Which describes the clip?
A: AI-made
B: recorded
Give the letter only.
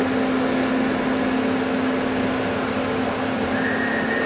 B